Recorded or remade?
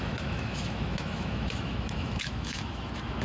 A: remade